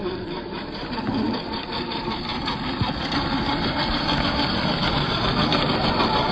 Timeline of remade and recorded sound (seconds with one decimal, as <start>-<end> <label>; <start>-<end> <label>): 0.0-6.3 remade